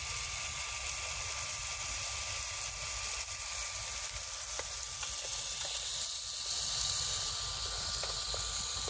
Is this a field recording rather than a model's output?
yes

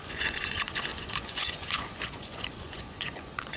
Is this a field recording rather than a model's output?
no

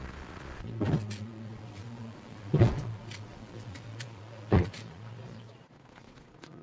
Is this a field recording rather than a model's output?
no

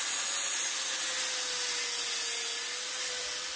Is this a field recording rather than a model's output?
yes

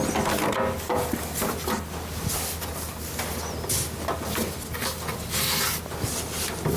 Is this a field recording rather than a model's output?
yes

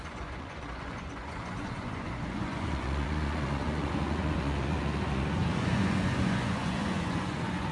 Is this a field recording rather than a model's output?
no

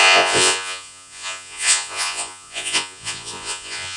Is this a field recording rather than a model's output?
no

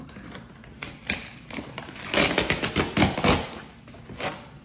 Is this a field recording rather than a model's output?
yes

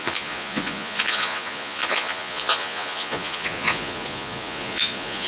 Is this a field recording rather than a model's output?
no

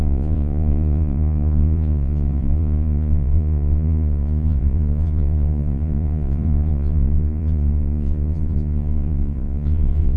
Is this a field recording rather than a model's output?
no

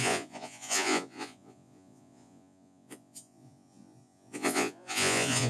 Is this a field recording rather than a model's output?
no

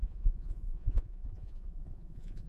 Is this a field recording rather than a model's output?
no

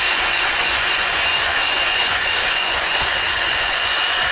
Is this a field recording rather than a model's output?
no